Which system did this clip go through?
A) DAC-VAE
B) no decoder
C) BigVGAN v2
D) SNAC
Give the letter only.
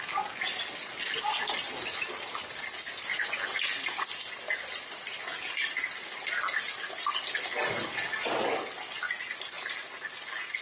B